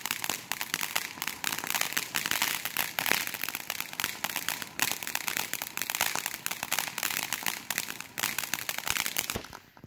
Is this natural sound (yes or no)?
yes